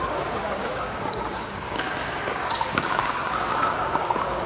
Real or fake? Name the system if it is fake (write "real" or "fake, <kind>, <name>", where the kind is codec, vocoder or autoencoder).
fake, codec, DAC